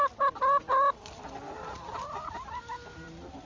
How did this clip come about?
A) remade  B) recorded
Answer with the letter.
B